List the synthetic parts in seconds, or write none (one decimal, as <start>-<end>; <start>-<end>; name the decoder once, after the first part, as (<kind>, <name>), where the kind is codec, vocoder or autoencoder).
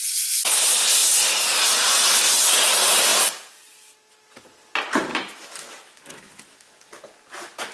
5.1-6.7 (autoencoder, DAC-VAE)